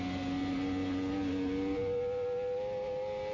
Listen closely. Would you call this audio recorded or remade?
recorded